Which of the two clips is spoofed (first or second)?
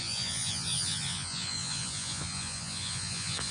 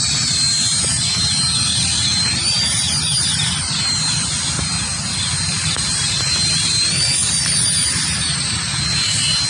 first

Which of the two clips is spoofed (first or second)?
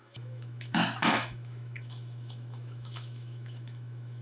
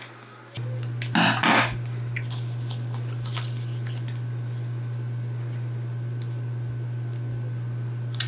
first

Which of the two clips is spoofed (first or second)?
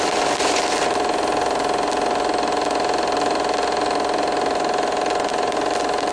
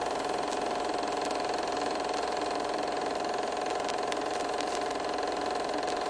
second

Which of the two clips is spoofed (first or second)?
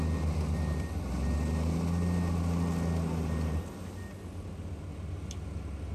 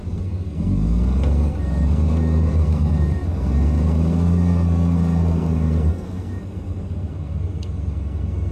second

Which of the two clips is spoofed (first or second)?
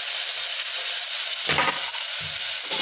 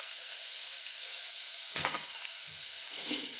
second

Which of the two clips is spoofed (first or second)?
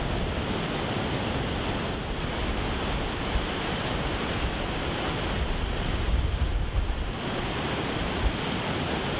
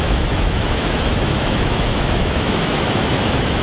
second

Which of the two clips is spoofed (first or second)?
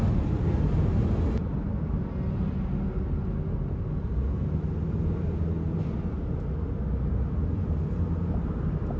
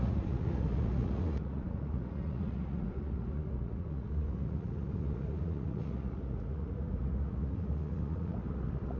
second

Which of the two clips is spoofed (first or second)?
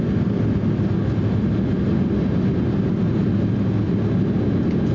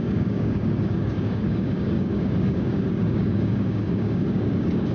second